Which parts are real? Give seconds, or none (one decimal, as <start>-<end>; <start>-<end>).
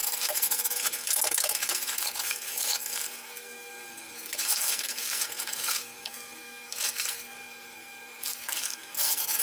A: none